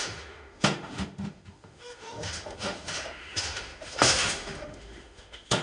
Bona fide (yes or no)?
no